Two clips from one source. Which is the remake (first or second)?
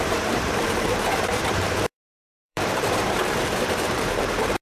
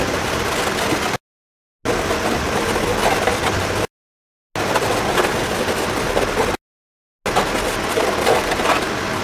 first